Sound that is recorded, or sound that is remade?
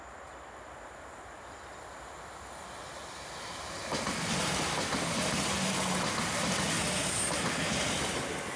recorded